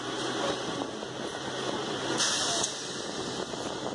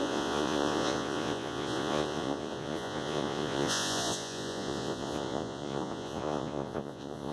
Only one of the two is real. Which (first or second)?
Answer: first